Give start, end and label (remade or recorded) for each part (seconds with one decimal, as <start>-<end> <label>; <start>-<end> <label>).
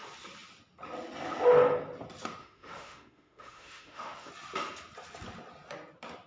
0.0-2.4 recorded; 2.4-4.3 remade; 4.3-6.3 recorded